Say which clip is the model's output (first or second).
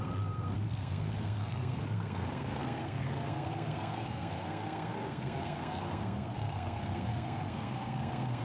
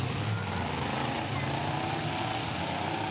first